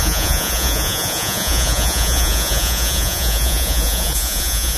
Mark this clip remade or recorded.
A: remade